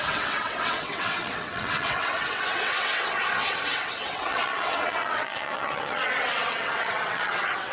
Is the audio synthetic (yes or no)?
yes